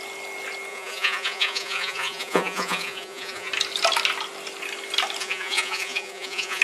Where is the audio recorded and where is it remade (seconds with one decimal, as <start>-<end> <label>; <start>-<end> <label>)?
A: 0.0-0.7 recorded; 0.7-3.5 remade; 3.5-5.2 recorded; 5.2-6.6 remade